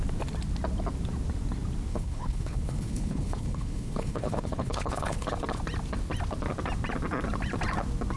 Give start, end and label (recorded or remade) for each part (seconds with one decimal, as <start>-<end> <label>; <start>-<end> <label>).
0.0-1.9 recorded; 1.9-5.3 remade; 5.3-8.2 recorded